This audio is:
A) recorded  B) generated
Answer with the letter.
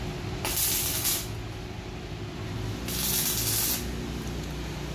A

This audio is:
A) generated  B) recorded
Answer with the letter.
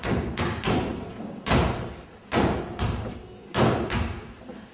B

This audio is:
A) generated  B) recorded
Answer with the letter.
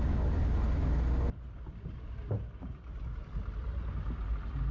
B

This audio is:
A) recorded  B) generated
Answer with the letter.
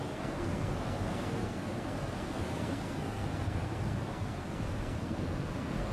B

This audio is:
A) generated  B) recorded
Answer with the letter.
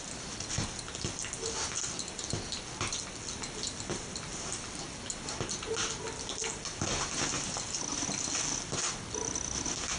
B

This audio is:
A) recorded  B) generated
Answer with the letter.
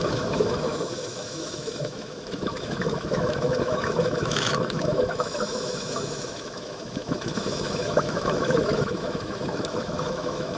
B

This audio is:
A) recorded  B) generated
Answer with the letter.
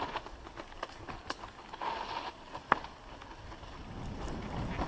A